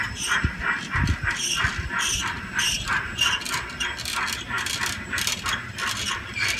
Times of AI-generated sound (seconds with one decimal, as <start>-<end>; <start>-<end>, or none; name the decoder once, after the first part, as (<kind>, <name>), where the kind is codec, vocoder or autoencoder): none